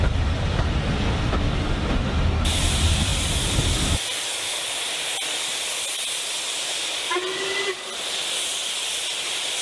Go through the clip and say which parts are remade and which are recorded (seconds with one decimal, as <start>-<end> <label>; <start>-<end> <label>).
0.0-9.6 recorded